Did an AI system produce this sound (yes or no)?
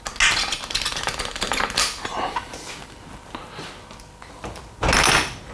no